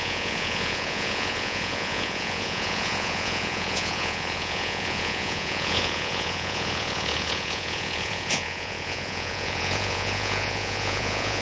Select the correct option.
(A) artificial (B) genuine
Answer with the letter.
A